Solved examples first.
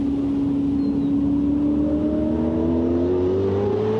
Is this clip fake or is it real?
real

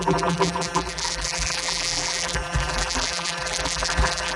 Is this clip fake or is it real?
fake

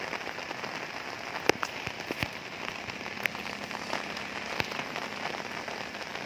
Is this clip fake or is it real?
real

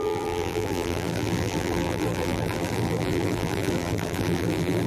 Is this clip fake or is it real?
fake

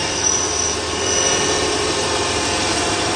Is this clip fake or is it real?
fake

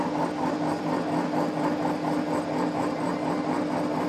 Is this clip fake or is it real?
real